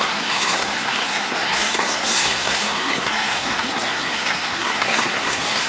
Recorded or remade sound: remade